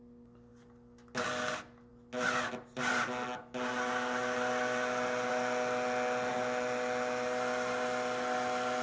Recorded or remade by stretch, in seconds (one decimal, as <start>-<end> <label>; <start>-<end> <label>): 0.0-8.8 recorded